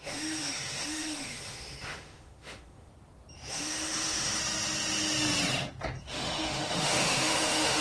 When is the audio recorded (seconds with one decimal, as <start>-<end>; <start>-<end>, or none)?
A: 2.9-3.5; 4.4-6.0